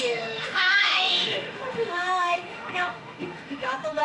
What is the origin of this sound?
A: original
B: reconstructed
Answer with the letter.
B